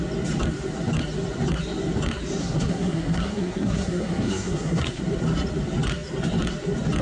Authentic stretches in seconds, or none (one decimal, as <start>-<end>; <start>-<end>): 0.0-2.4; 5.0-7.0